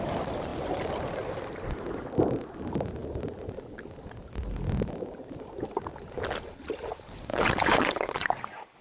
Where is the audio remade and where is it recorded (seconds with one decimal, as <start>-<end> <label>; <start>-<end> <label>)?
0.0-7.3 recorded; 7.3-8.3 remade; 8.3-8.8 recorded